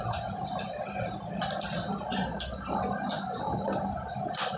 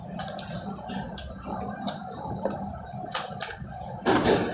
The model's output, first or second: second